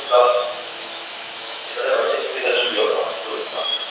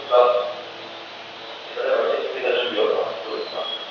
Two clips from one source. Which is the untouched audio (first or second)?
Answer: second